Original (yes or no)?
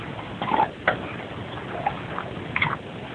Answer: yes